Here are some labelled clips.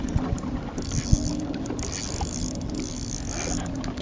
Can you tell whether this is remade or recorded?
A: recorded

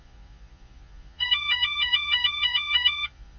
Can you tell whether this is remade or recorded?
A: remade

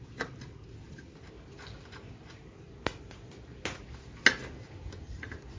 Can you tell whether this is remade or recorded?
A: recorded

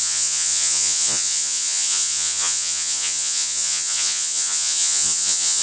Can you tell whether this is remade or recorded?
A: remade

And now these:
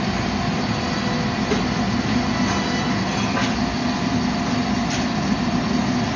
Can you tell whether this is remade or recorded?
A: recorded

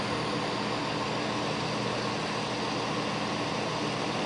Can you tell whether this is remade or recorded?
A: recorded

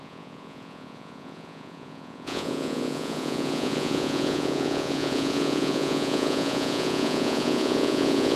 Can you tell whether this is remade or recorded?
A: remade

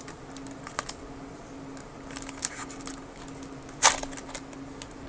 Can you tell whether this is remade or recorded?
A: recorded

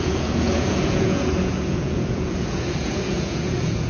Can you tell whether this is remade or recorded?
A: remade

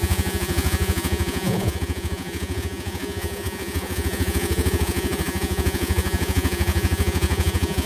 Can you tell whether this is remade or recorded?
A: remade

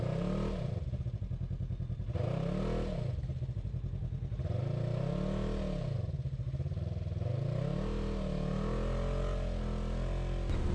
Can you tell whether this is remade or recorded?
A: recorded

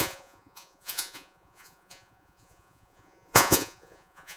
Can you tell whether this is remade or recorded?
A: remade